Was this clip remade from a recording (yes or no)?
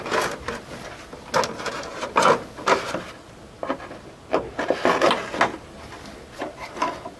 no